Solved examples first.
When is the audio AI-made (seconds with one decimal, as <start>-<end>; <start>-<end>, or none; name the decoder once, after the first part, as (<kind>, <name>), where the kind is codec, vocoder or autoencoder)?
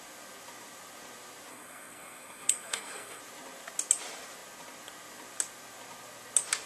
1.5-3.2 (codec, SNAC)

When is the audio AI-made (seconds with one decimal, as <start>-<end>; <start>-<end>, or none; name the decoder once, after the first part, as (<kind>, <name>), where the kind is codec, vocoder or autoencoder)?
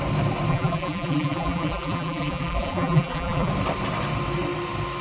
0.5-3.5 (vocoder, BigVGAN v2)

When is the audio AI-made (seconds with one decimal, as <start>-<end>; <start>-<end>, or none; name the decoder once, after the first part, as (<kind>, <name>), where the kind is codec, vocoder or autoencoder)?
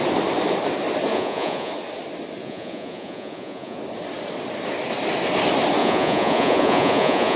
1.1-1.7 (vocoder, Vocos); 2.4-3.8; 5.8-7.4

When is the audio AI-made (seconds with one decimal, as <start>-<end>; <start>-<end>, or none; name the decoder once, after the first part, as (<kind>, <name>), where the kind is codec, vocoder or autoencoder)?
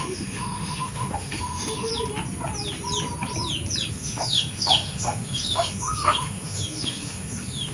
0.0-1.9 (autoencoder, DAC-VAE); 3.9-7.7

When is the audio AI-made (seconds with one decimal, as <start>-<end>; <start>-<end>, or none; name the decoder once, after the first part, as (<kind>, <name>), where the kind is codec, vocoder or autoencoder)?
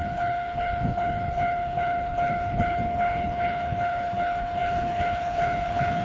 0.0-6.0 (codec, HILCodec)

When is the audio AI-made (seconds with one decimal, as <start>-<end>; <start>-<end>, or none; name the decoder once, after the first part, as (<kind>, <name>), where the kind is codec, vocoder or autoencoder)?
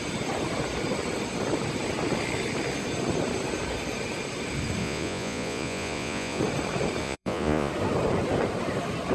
4.8-6.4 (vocoder, Vocos); 7.0-7.7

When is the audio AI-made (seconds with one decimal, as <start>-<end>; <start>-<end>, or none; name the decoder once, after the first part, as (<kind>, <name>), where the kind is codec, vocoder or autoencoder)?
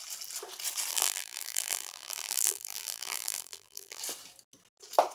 0.9-4.0 (vocoder, BigVGAN v2)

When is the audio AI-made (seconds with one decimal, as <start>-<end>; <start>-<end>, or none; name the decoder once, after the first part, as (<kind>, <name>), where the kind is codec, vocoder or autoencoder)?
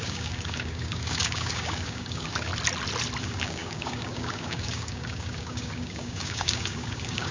0.0-2.5 (codec, DAC); 3.2-7.3